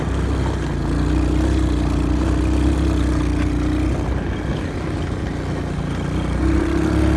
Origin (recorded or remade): recorded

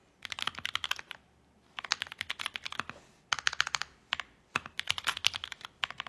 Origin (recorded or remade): recorded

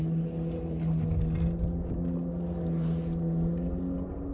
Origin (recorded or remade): recorded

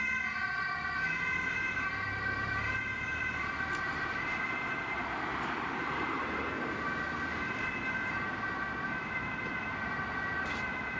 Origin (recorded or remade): recorded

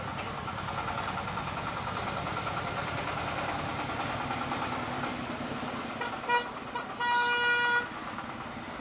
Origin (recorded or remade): recorded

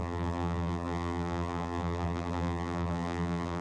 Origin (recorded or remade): remade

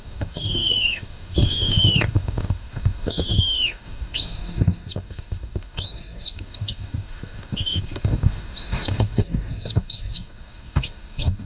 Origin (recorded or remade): remade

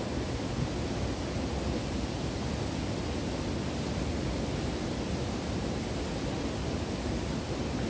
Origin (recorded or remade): recorded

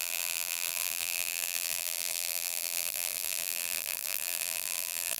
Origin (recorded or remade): remade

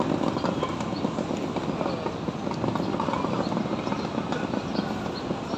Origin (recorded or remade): recorded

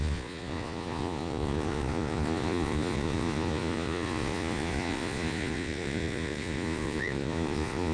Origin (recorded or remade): remade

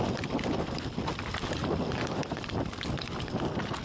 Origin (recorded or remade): recorded